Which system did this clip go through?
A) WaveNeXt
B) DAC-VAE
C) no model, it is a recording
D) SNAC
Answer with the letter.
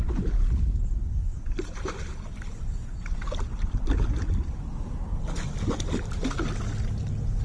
C